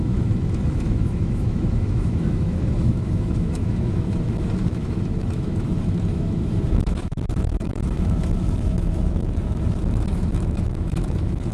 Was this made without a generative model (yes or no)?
no